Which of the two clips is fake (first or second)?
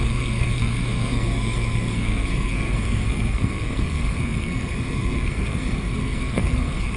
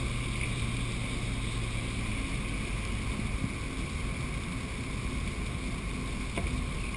first